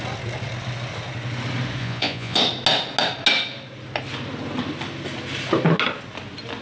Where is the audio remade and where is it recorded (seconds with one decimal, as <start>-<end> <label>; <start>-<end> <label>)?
0.0-1.8 recorded; 1.8-2.4 remade; 2.4-6.6 recorded